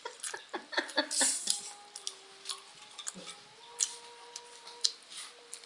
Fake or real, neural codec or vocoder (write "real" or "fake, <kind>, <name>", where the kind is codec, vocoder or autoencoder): real